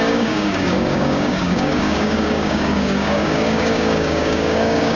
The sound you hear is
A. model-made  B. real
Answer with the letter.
A